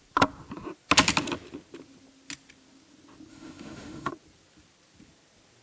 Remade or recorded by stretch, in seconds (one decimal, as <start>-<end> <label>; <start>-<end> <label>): 0.0-3.3 recorded; 3.3-4.1 remade; 4.1-5.6 recorded